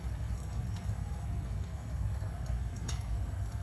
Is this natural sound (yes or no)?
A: no